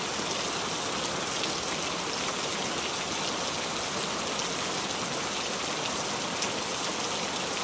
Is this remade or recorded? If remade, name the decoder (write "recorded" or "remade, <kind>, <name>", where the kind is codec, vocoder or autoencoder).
recorded